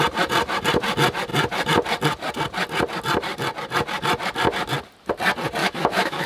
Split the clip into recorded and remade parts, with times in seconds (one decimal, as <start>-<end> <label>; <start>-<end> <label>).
0.0-5.6 recorded; 5.6-6.3 remade